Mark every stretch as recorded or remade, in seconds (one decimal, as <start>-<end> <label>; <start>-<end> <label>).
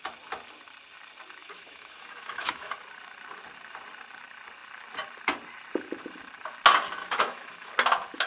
0.0-1.4 recorded; 1.4-2.7 remade; 2.7-7.0 recorded; 7.0-7.7 remade; 7.7-8.3 recorded